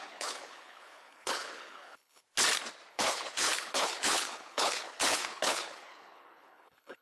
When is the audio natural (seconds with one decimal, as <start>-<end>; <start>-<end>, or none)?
2.2-2.9